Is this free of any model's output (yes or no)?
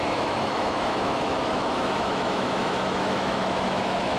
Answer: no